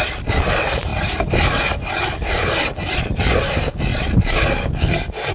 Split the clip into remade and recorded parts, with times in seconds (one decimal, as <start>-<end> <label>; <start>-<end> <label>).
0.0-5.3 recorded

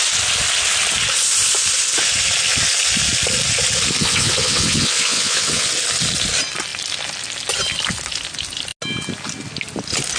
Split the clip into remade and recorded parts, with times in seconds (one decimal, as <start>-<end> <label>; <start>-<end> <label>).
0.0-4.0 recorded; 4.0-5.7 remade; 5.7-10.2 recorded

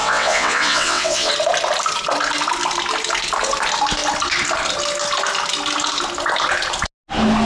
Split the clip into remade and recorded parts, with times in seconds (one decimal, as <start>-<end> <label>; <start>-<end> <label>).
0.0-1.3 remade; 1.3-7.5 recorded

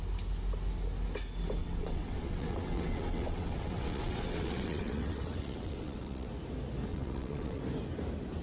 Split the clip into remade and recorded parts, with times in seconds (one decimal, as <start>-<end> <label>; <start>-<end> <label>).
0.0-1.6 recorded; 1.6-6.3 remade; 6.3-6.9 recorded; 6.9-7.6 remade; 7.6-8.4 recorded

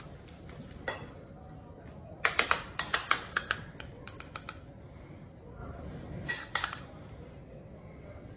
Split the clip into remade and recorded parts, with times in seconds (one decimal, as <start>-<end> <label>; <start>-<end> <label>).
0.0-3.0 recorded; 3.0-4.2 remade; 4.2-7.4 recorded; 7.4-8.4 remade

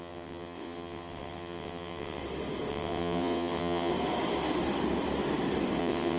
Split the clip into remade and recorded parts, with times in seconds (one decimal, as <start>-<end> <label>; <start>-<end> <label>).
0.0-2.2 remade; 2.2-2.7 recorded; 2.7-3.9 remade; 3.9-5.8 recorded; 5.8-6.2 remade

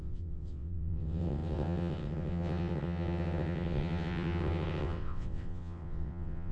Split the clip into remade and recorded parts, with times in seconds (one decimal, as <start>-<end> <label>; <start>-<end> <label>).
0.0-6.5 remade

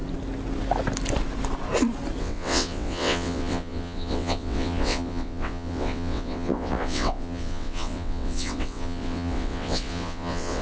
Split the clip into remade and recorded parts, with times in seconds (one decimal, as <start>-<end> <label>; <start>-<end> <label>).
0.0-2.2 recorded; 2.2-10.6 remade